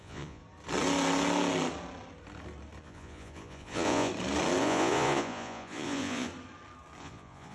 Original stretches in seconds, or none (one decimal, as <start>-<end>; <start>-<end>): 0.4-2.8; 4.1-4.6; 6.3-7.0